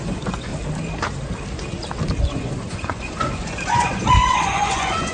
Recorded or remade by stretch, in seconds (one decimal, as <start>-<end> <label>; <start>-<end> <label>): 0.0-0.5 remade; 0.5-2.2 recorded; 2.2-5.1 remade

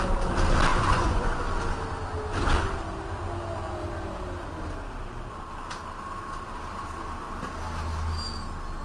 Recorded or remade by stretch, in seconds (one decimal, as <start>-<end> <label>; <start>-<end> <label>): 0.0-0.7 recorded; 0.7-1.4 remade; 1.4-8.8 recorded

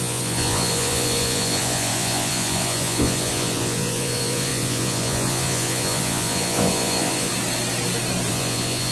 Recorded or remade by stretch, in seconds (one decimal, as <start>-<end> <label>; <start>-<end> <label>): 0.0-7.3 remade; 7.3-8.3 recorded; 8.3-8.9 remade

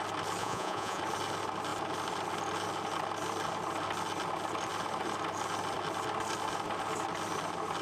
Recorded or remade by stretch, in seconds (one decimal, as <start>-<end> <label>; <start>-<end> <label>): 0.0-0.4 recorded; 0.4-1.0 remade; 1.0-7.8 recorded

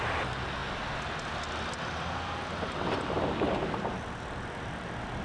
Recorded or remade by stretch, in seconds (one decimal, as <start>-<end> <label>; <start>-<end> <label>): 0.0-5.2 recorded

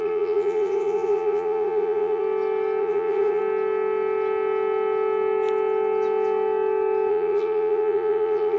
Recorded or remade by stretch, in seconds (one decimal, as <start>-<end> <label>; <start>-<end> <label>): 0.0-2.2 remade; 2.2-2.8 recorded; 2.8-3.4 remade; 3.4-7.1 recorded; 7.1-8.6 remade